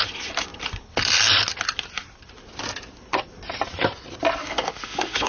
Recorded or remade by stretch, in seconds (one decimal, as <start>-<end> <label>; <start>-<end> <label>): 0.0-4.4 recorded; 4.4-5.3 remade